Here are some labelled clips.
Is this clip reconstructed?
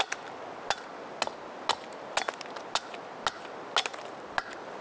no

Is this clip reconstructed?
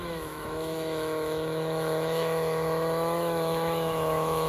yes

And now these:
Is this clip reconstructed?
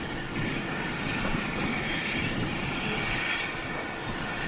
no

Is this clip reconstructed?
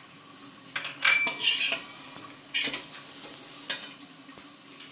no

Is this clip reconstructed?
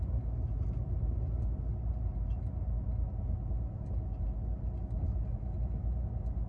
no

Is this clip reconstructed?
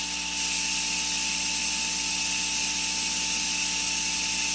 no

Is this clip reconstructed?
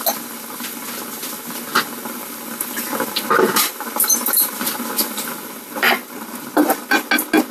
no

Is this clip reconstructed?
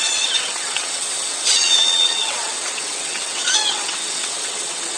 yes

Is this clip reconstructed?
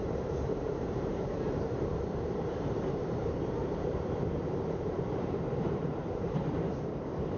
yes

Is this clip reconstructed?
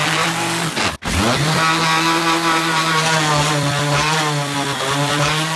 no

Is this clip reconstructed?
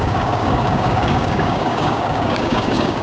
yes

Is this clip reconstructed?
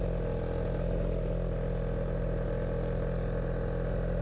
no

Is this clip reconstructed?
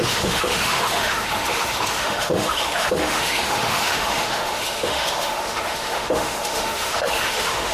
yes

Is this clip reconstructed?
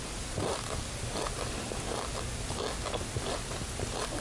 no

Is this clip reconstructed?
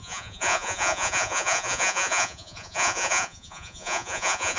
yes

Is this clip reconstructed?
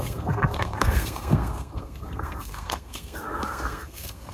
yes